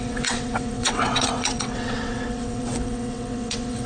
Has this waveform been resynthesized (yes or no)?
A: yes